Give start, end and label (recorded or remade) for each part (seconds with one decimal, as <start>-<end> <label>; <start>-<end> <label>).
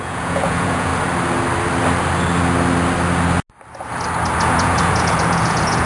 0.0-0.9 remade; 0.9-4.4 recorded; 4.4-5.9 remade